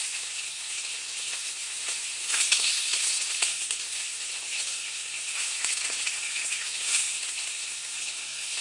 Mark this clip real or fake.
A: fake